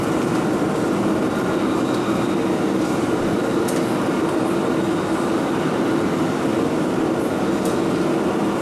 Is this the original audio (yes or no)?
yes